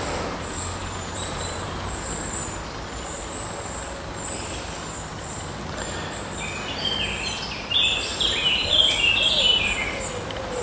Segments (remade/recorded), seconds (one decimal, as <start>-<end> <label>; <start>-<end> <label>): 0.0-0.8 recorded; 0.8-1.7 remade; 1.7-8.1 recorded; 8.1-9.7 remade; 9.7-10.6 recorded